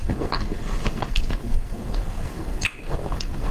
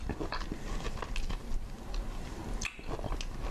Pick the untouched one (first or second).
second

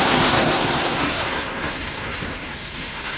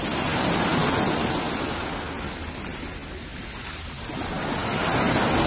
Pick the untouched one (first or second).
second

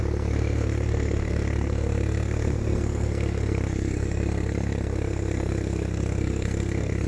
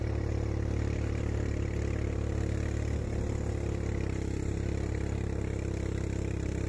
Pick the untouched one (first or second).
second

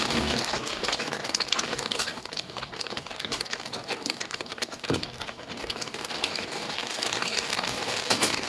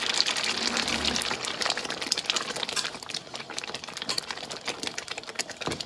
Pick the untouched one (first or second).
second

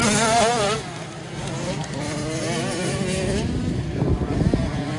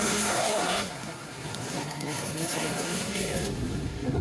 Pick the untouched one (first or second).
first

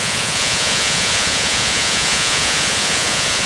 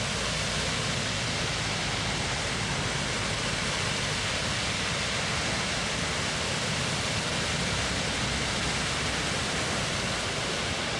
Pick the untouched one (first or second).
second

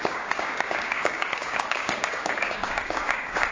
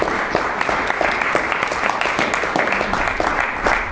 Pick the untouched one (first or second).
second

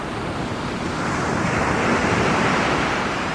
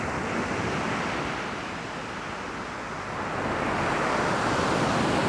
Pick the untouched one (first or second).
second